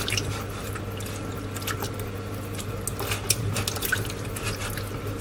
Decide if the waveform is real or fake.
real